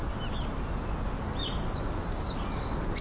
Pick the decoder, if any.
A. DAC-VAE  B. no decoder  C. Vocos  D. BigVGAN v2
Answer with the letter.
B